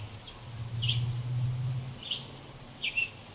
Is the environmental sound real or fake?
real